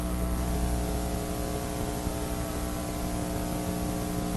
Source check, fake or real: real